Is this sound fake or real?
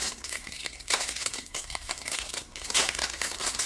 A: fake